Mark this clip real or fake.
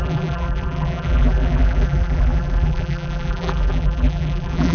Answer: fake